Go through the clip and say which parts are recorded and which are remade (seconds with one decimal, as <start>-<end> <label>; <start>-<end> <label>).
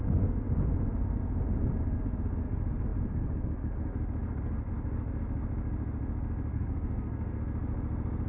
0.0-6.5 recorded; 6.5-7.4 remade; 7.4-8.3 recorded